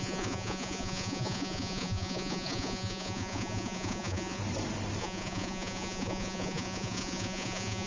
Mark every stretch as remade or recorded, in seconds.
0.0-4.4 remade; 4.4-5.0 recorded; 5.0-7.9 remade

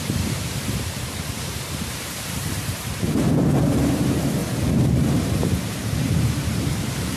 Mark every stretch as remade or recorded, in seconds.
0.0-4.4 remade; 4.4-4.9 recorded; 4.9-7.2 remade

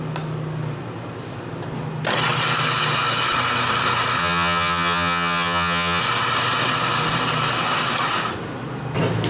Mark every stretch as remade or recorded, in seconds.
0.0-4.2 recorded; 4.2-6.0 remade; 6.0-9.3 recorded

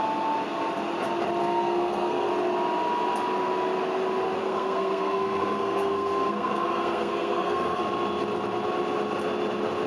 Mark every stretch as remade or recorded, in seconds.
0.0-1.4 recorded; 1.4-2.3 remade; 2.3-4.4 recorded; 4.4-7.8 remade; 7.8-9.9 recorded

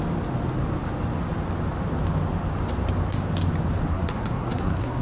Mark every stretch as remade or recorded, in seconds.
0.0-3.9 recorded; 3.9-5.0 remade

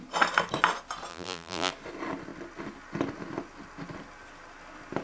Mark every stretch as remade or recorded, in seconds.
0.0-1.1 recorded; 1.1-1.7 remade; 1.7-5.0 recorded

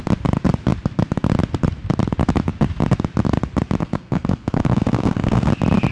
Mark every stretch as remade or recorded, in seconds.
0.0-3.8 recorded; 3.8-5.5 remade; 5.5-5.9 recorded